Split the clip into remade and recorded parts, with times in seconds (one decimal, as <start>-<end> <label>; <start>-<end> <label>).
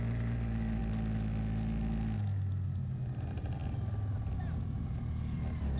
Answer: 0.0-0.8 remade; 0.8-3.2 recorded; 3.2-5.8 remade